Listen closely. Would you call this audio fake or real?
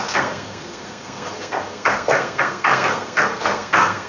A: fake